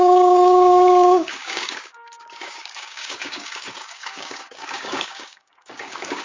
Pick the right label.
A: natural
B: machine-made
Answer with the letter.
B